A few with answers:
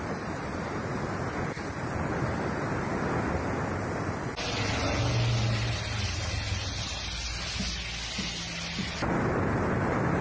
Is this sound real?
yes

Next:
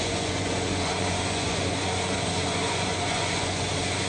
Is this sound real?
no